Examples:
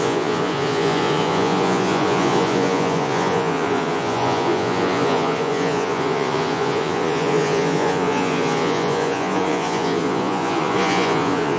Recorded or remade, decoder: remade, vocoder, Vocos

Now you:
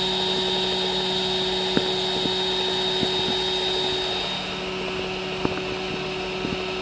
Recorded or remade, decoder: recorded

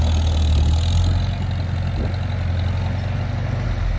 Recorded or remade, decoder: recorded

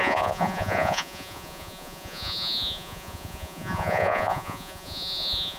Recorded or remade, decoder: remade, vocoder, Vocos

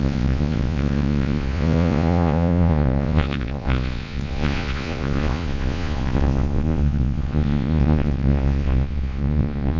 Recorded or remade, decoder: remade, vocoder, Vocos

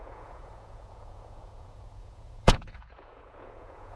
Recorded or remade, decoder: remade, vocoder, Vocos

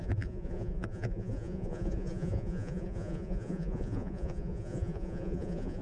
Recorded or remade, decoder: remade, vocoder, Vocos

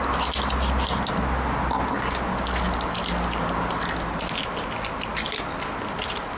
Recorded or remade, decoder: recorded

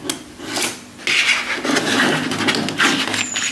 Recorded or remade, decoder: recorded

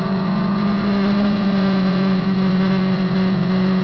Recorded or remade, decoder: remade, vocoder, Vocos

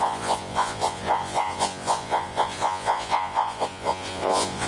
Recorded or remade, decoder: remade, vocoder, Vocos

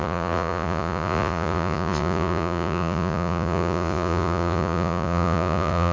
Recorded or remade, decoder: remade, vocoder, Vocos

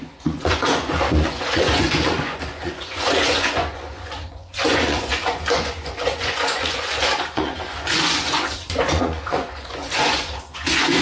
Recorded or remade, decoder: remade, vocoder, Vocos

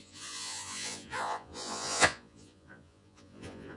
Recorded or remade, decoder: remade, vocoder, Vocos